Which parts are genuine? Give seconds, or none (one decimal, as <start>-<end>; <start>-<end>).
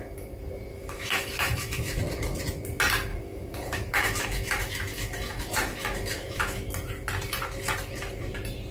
0.0-0.7; 2.0-3.1; 6.7-8.7